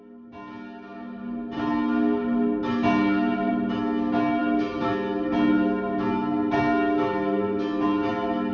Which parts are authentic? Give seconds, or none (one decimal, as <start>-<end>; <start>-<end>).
0.0-8.5